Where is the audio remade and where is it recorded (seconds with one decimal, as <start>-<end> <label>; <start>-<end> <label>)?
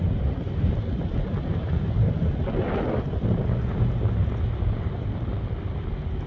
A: 0.0-6.3 recorded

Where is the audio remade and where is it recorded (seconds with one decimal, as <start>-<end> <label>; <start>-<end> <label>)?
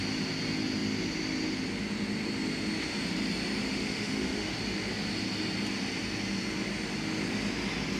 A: 0.0-3.6 recorded; 3.6-4.6 remade; 4.6-8.0 recorded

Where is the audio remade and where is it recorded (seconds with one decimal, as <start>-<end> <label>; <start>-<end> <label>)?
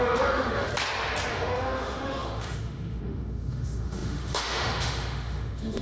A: 0.0-0.7 remade; 0.7-1.3 recorded; 1.3-5.8 remade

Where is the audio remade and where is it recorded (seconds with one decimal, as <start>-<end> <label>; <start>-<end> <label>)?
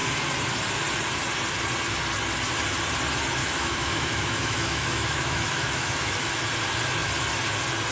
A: 0.0-3.4 recorded; 3.4-6.4 remade; 6.4-7.9 recorded